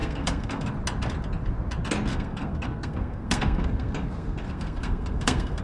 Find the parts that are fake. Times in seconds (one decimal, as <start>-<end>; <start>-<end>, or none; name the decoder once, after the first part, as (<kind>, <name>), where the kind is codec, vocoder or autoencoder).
0.0-0.7 (codec, SNAC); 2.1-5.6